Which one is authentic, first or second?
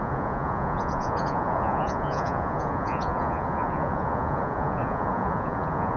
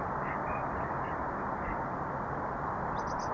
second